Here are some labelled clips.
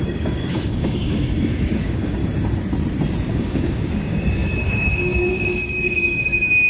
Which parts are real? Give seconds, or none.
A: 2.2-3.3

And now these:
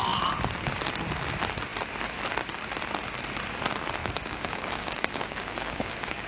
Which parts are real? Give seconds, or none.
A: 0.0-4.0

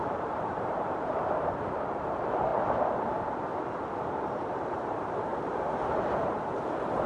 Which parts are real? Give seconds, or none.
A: 5.3-6.1

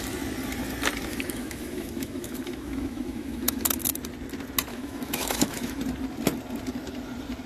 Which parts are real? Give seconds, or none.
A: 0.0-1.1; 3.8-4.7; 5.8-7.5

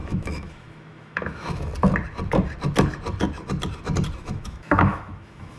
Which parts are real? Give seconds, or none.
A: 1.7-4.2

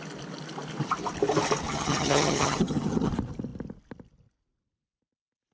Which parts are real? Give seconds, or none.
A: 0.0-1.7; 3.1-5.5

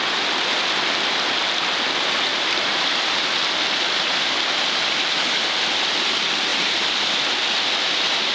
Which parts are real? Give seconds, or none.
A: 0.0-2.3; 3.2-6.5; 7.4-8.3

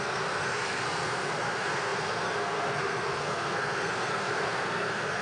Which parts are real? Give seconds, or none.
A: none